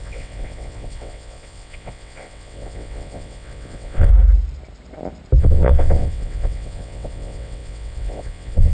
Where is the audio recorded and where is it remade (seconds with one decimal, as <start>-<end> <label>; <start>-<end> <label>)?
0.0-4.1 remade; 4.1-5.4 recorded; 5.4-8.7 remade